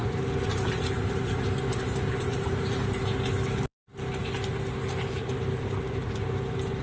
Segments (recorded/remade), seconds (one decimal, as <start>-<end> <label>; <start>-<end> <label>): 0.0-3.0 remade; 3.0-3.7 recorded; 3.7-4.2 remade; 4.2-6.8 recorded